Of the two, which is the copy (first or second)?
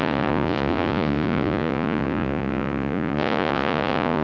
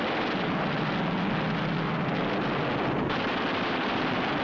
first